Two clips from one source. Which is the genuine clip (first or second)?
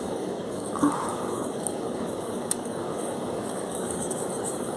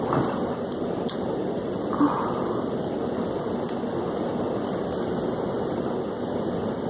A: second